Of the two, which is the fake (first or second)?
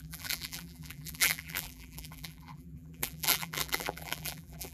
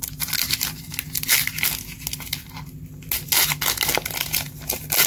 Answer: first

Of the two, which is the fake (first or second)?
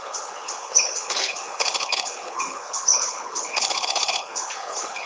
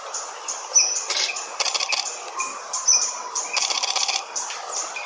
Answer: first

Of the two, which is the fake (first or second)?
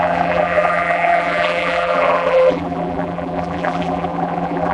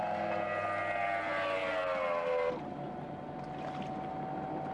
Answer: first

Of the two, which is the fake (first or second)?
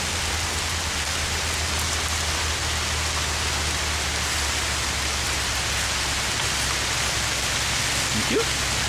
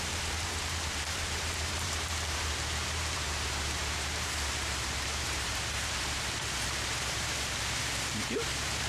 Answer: second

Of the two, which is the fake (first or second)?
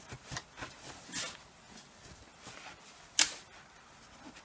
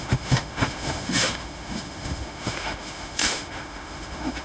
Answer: second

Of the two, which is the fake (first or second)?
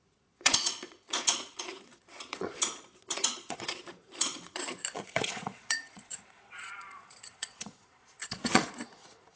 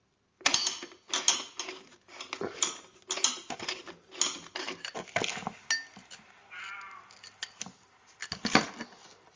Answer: first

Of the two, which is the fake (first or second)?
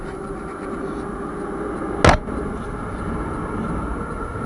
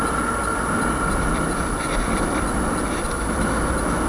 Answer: second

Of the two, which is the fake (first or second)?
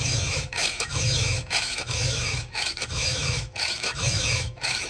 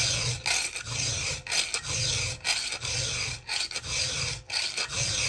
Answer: first